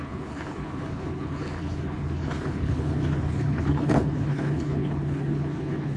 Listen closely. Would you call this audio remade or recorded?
remade